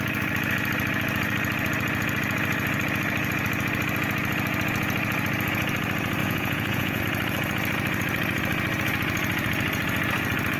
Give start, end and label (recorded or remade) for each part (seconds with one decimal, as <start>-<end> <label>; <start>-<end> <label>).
0.0-6.2 recorded; 6.2-7.0 remade; 7.0-10.6 recorded